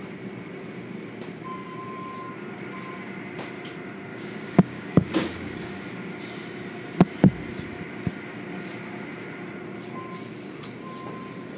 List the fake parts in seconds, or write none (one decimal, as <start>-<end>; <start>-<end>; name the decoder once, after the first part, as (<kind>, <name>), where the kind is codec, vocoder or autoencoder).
4.1-5.7 (codec, DAC)